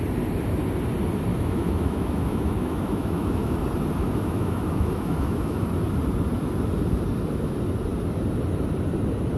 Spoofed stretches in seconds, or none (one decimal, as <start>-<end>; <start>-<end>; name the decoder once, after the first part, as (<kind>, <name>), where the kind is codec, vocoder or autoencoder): 1.3-3.6 (autoencoder, DAC-VAE); 4.0-5.6